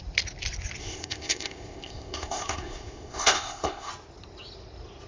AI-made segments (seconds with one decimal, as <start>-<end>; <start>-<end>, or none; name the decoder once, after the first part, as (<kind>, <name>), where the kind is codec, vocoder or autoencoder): 0.8-3.9 (codec, ZipCodec)